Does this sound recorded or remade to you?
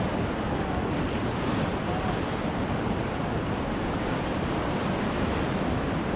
remade